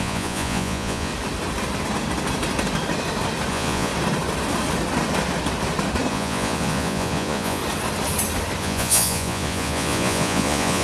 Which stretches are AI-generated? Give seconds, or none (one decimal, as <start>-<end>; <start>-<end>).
0.0-1.1; 3.5-3.9; 6.1-7.6; 8.6-10.8